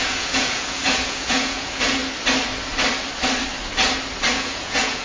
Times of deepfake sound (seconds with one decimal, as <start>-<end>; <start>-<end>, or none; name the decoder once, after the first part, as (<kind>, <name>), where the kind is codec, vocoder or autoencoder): 0.0-2.0 (vocoder, Vocos); 4.3-5.0